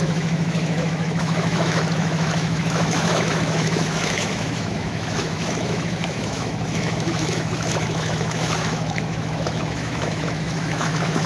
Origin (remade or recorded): remade